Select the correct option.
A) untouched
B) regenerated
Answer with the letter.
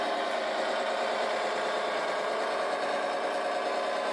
A